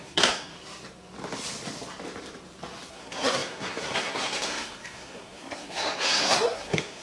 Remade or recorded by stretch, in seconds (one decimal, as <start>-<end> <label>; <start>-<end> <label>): 0.0-0.5 remade; 0.5-2.9 recorded; 2.9-7.0 remade

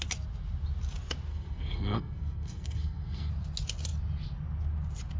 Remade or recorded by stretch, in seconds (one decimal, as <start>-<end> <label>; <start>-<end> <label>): 0.0-1.3 recorded; 1.3-3.3 remade; 3.3-5.2 recorded

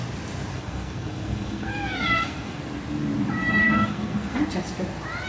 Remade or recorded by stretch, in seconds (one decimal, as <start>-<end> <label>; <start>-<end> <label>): 0.0-0.5 recorded; 0.5-2.6 remade; 2.6-3.6 recorded; 3.6-4.4 remade; 4.4-5.3 recorded

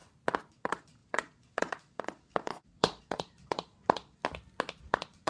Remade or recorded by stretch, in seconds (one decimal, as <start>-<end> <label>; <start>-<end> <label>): 0.0-0.5 recorded; 0.5-4.2 remade; 4.2-4.8 recorded; 4.8-5.3 remade

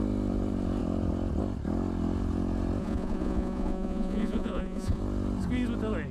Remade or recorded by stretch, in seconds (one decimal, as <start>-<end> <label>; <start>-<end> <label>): 0.0-2.8 recorded; 2.8-5.0 remade; 5.0-6.1 recorded

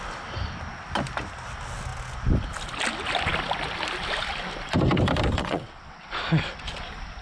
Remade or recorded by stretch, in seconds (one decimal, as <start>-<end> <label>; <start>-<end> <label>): 0.0-5.4 recorded; 5.4-6.1 remade; 6.1-7.2 recorded